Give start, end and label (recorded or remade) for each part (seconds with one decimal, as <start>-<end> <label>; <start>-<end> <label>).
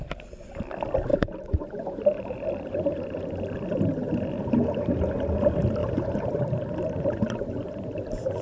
0.0-1.1 recorded; 1.1-3.2 remade; 3.2-5.8 recorded; 5.8-6.4 remade; 6.4-8.4 recorded